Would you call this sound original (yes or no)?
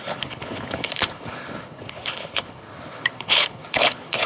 no